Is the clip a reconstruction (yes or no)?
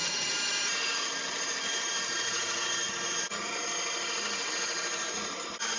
no